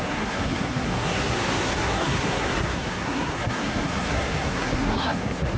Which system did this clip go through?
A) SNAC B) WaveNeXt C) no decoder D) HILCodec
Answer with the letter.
A